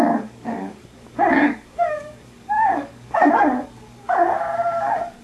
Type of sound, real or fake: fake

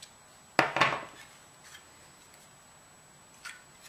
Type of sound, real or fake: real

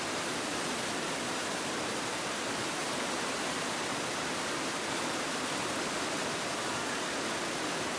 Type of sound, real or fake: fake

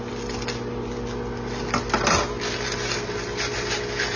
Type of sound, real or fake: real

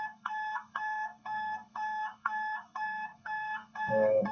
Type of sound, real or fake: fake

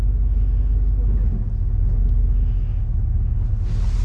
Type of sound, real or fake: real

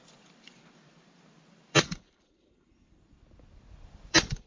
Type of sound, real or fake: fake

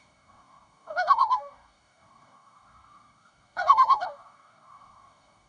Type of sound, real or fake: fake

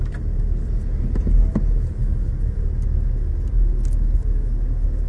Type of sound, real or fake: real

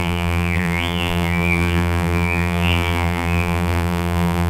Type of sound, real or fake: fake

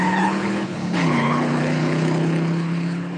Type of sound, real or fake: fake